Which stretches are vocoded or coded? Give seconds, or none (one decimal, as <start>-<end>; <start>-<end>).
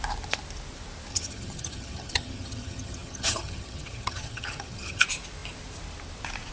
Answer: 1.1-5.0